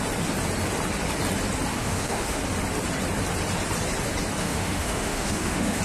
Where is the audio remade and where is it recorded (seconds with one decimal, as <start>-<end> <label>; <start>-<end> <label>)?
0.0-1.7 recorded; 1.7-2.4 remade; 2.4-4.4 recorded; 4.4-5.8 remade